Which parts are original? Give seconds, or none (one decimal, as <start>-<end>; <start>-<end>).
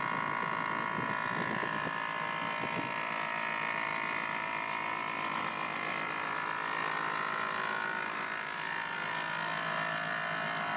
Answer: 0.0-10.8